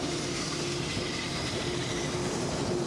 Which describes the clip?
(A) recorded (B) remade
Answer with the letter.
B